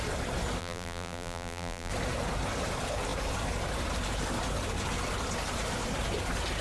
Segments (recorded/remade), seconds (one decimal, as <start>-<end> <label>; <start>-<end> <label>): 0.0-0.6 recorded; 0.6-1.9 remade; 1.9-6.6 recorded

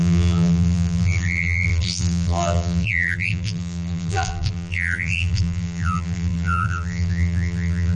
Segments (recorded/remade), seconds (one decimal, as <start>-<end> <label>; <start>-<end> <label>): 0.0-8.0 remade